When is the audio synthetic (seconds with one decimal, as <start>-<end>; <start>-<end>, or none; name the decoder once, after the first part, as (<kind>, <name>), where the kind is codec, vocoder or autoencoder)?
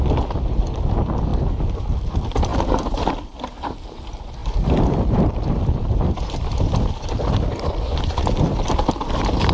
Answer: 1.3-2.1 (vocoder, BigVGAN v2); 4.4-8.0